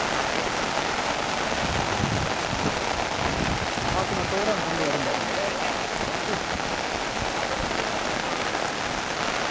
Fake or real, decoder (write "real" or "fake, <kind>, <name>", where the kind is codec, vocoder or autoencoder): real